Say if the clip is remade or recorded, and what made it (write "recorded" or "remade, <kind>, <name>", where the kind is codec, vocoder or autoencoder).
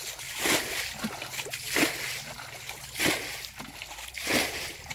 recorded